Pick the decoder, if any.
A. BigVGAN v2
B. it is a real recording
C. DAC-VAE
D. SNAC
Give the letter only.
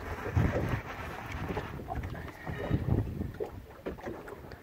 B